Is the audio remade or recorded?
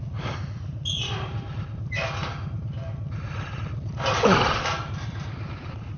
recorded